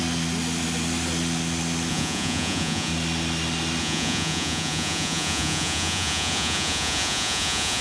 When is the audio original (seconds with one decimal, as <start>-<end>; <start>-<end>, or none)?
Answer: 0.0-1.9; 2.9-3.8